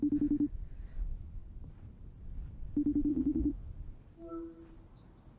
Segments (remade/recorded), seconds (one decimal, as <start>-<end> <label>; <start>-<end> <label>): 0.0-3.1 recorded; 3.1-3.7 remade; 3.7-5.4 recorded